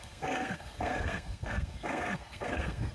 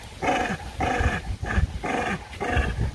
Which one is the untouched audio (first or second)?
second